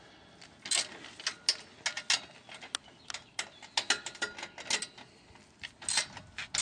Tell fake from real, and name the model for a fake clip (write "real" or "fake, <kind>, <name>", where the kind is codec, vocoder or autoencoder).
real